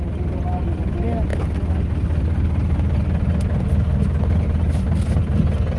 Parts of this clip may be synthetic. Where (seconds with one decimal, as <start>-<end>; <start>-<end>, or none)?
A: none